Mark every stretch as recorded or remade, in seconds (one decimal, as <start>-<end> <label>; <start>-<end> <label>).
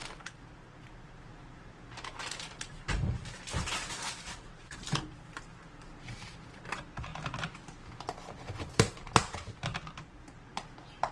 0.0-7.1 remade; 7.1-8.4 recorded; 8.4-9.7 remade; 9.7-10.5 recorded; 10.5-11.1 remade